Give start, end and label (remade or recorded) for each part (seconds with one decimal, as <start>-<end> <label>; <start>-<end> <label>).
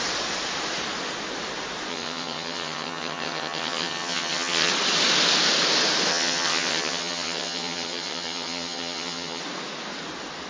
0.0-1.9 recorded; 1.9-4.7 remade; 4.7-6.1 recorded; 6.1-9.4 remade; 9.4-10.5 recorded